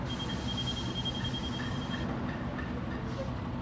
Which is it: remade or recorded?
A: recorded